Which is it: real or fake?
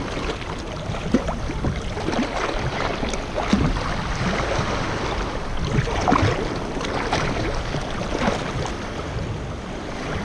real